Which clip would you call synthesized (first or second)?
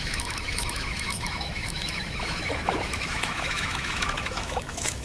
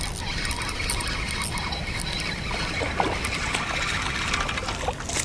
first